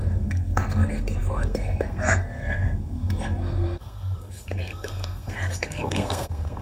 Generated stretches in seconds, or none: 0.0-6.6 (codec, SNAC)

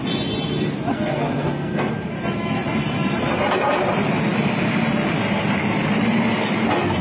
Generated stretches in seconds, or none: 0.9-1.9 (codec, SNAC)

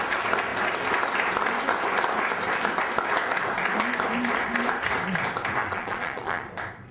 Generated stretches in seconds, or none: 5.6-6.5 (vocoder, Vocos)

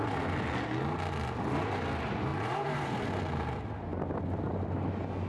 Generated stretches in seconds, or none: 2.3-3.1 (vocoder, BigVGAN v2)

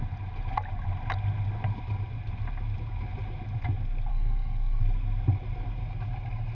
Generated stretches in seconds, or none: 4.1-4.8 (codec, SNAC)

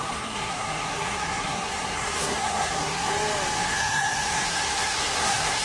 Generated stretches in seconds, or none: 0.0-3.1 (codec, SNAC); 3.6-5.6

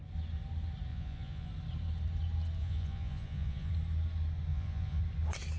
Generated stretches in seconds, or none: 0.9-1.5 (vocoder, Vocos); 2.6-3.7; 4.5-5.0

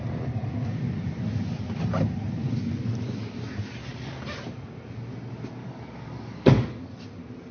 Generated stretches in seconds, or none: 5.6-6.8 (codec, DAC)